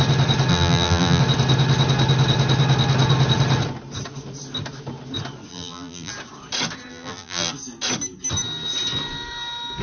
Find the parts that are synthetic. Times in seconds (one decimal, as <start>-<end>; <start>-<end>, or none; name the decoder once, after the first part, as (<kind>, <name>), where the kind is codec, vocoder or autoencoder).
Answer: 0.5-1.2 (vocoder, BigVGAN v2); 5.5-6.1; 6.9-7.5